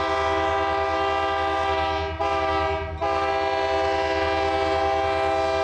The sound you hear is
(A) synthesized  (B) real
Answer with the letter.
B